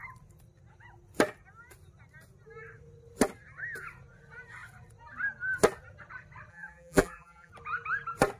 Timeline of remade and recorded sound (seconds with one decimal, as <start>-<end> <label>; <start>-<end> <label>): 0.0-6.5 recorded; 6.5-7.5 remade; 7.5-8.4 recorded